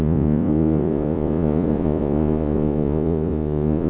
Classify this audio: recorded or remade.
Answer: remade